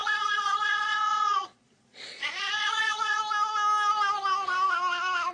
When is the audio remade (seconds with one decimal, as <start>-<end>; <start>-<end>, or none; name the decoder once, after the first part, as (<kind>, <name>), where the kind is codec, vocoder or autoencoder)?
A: 0.0-3.2 (vocoder, Vocos)